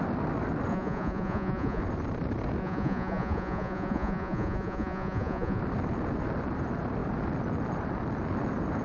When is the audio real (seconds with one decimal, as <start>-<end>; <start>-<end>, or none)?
0.0-0.7; 1.8-2.6; 5.6-8.8